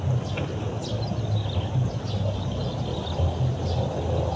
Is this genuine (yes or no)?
yes